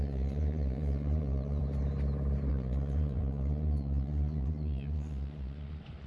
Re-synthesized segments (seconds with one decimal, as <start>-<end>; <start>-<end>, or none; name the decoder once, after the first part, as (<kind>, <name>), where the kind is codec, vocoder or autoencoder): 0.0-1.6 (vocoder, Vocos); 2.5-6.1